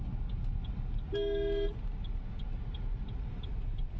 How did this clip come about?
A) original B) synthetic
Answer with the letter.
A